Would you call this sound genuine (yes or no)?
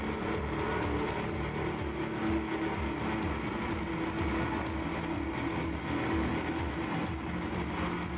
yes